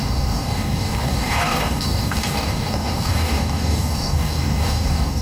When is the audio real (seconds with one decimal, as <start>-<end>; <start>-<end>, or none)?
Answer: none